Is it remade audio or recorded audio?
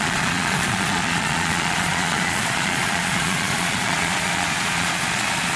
remade